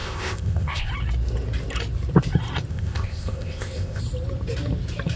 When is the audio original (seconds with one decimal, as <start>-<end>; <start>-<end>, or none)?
0.9-2.7; 4.0-5.2